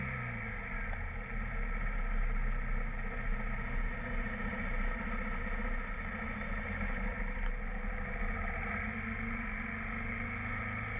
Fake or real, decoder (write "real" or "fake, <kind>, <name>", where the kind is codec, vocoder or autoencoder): real